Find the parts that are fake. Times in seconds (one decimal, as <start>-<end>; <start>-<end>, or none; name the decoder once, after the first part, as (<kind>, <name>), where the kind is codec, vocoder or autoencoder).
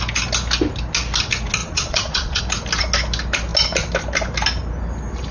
1.6-2.4 (vocoder, Vocos)